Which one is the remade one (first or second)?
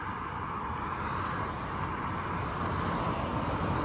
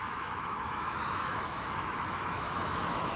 second